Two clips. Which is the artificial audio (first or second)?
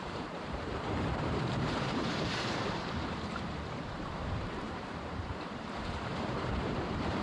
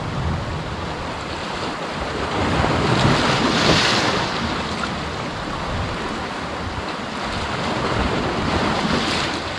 first